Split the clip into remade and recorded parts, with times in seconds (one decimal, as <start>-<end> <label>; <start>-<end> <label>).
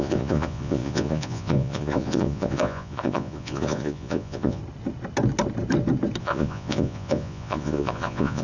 0.0-4.6 remade; 4.6-6.2 recorded; 6.2-8.4 remade